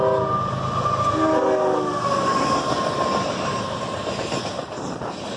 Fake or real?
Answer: real